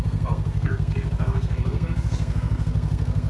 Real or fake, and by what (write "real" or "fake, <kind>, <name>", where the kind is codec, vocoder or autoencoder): fake, codec, SNAC